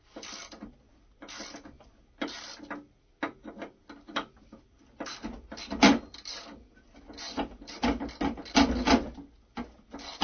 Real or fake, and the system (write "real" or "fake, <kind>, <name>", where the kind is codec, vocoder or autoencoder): real